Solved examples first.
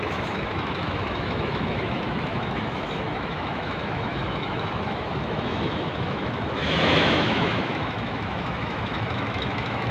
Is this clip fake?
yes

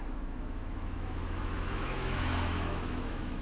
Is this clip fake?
yes